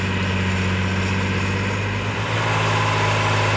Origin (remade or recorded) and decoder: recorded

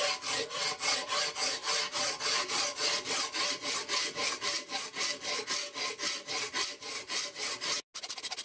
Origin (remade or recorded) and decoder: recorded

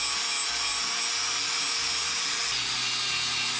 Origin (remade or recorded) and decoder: recorded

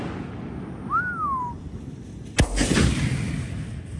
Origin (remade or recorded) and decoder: recorded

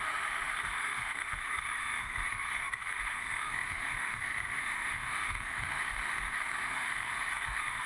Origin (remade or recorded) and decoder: remade, autoencoder, DAC-VAE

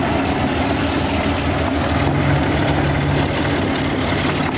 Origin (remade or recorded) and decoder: recorded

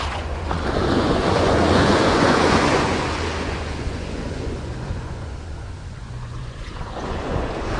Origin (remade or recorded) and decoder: remade, vocoder, Vocos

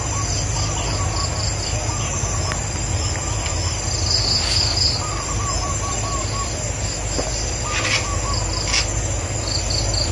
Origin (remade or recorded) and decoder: recorded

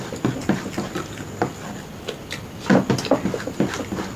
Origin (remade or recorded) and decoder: recorded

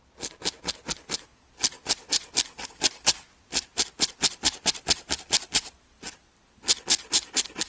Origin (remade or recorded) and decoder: recorded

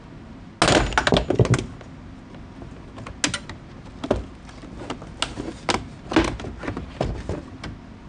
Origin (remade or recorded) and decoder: recorded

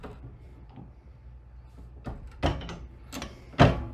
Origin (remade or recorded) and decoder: recorded